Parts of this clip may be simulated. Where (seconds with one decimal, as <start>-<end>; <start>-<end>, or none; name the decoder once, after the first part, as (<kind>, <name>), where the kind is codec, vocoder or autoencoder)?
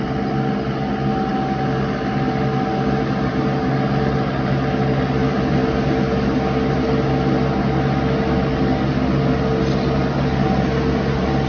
none